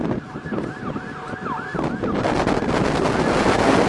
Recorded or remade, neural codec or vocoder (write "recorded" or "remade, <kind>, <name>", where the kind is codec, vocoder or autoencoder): recorded